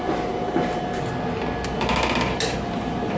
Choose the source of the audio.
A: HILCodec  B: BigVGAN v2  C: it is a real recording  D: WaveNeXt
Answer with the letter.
C